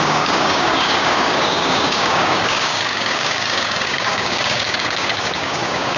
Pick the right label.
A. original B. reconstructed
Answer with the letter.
B